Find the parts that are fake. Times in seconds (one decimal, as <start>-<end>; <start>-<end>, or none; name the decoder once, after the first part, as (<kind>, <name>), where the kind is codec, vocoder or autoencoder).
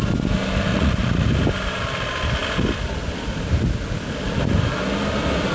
0.7-1.3 (vocoder, Vocos)